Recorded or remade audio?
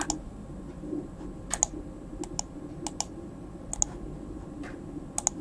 recorded